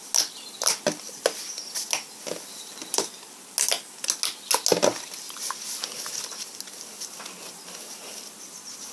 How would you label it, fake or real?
real